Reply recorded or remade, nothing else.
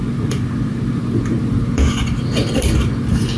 remade